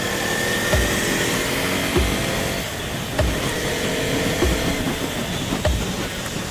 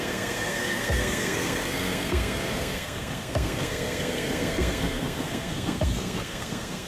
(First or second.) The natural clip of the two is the first